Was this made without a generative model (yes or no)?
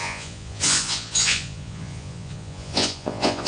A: no